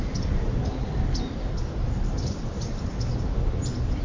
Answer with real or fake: real